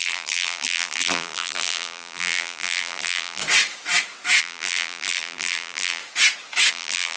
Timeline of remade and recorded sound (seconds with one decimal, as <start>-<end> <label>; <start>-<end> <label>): 0.0-3.4 remade; 3.4-4.4 recorded; 4.4-6.0 remade; 6.0-6.7 recorded; 6.7-7.2 remade